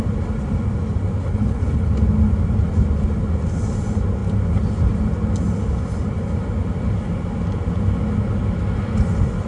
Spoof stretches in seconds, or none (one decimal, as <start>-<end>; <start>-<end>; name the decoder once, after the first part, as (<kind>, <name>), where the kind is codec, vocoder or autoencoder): 1.2-1.9 (codec, HILCodec)